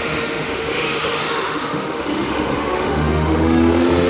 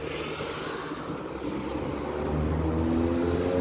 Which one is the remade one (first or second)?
first